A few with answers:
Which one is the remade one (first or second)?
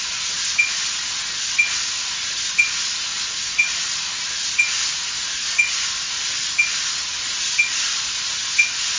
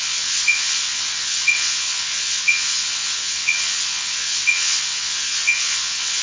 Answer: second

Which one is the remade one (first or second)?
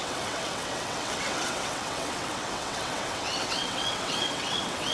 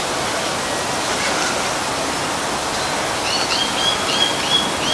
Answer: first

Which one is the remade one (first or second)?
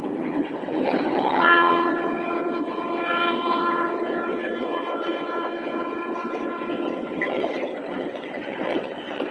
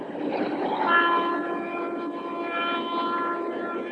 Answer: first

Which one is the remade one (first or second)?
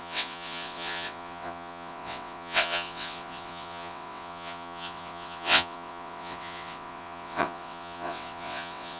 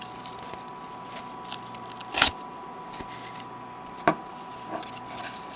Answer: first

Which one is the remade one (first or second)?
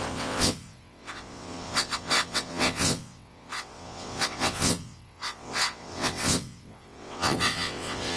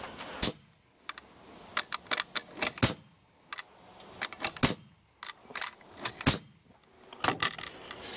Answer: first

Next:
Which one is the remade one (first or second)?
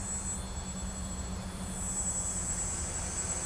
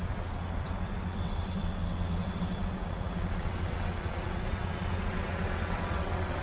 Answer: second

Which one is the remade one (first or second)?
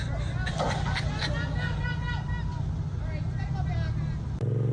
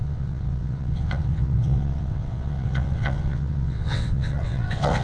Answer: second